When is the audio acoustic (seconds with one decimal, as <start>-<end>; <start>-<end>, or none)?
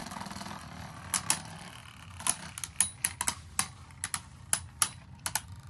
0.0-5.7